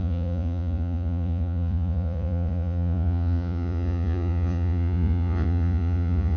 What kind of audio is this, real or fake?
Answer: fake